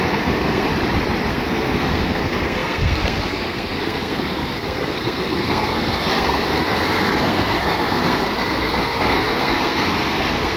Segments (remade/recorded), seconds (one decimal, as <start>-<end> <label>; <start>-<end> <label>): 0.0-0.7 remade; 0.7-1.3 recorded; 1.3-10.6 remade